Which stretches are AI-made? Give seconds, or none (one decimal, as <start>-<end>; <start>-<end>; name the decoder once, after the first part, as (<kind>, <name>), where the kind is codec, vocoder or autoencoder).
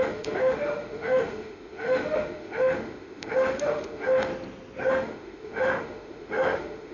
0.0-4.3 (autoencoder, DAC-VAE); 4.9-6.9